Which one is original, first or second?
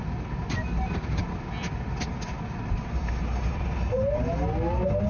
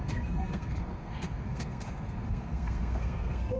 first